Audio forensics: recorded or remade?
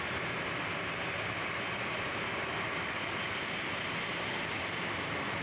recorded